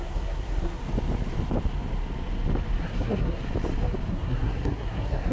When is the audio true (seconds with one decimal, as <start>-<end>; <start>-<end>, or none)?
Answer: 0.8-2.8; 3.4-4.1